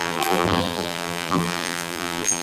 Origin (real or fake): fake